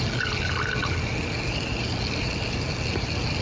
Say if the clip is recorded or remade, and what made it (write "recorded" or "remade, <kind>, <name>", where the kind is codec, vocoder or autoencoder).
recorded